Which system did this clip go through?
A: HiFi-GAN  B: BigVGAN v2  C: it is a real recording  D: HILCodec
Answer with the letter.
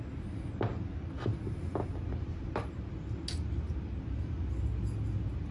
C